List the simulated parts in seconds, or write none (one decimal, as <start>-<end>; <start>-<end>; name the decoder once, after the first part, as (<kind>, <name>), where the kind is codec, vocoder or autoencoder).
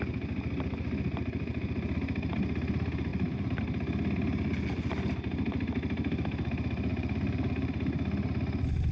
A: 3.1-3.6 (vocoder, BigVGAN v2); 6.9-7.7